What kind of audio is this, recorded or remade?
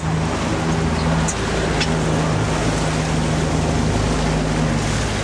recorded